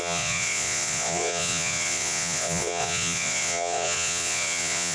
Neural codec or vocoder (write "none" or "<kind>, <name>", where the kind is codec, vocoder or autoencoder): vocoder, Vocos